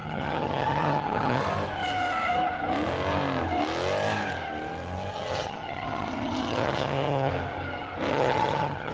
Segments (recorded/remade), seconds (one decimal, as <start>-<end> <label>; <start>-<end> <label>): 0.0-1.4 remade; 1.4-5.1 recorded; 5.1-7.3 remade; 7.3-8.1 recorded; 8.1-8.9 remade